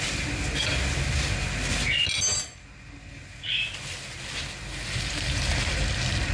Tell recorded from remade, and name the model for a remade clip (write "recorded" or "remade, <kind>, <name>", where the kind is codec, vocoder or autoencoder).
recorded